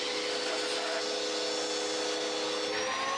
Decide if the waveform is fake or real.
real